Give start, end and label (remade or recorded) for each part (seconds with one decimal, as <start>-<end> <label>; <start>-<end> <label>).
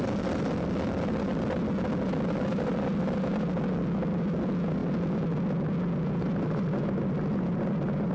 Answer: 0.0-8.1 recorded